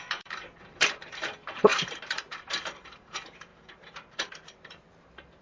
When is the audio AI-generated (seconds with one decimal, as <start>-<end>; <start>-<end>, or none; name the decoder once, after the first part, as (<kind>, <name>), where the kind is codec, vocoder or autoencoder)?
0.0-5.4 (vocoder, BigVGAN v2)